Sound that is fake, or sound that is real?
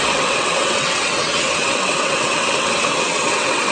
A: fake